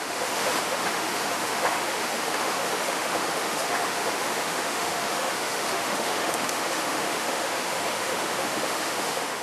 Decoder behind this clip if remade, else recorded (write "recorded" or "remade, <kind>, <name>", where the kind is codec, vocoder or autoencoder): remade, autoencoder, DAC-VAE